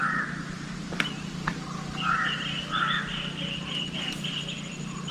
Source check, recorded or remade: recorded